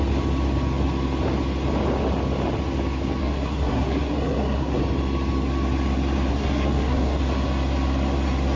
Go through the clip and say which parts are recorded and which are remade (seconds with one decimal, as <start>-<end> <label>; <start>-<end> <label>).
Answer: 0.0-3.2 recorded; 3.2-4.8 remade; 4.8-6.3 recorded; 6.3-7.2 remade; 7.2-8.6 recorded